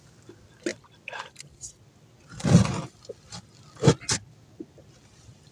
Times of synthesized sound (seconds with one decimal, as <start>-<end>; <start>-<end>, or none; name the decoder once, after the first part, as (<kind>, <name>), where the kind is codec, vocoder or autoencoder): none